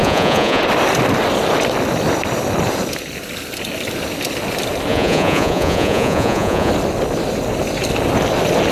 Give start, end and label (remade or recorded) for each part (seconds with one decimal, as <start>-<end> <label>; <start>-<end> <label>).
0.0-0.6 remade; 0.6-4.9 recorded; 4.9-6.7 remade; 6.7-8.7 recorded